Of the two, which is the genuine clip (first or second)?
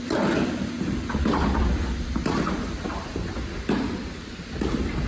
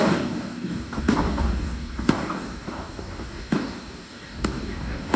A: first